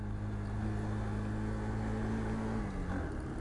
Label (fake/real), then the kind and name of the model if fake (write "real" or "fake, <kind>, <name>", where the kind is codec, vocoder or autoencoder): real